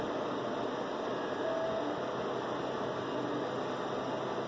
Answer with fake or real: real